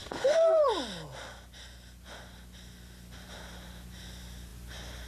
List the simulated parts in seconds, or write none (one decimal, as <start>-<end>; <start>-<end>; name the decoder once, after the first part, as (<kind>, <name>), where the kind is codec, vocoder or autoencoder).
0.0-0.6 (codec, SNAC)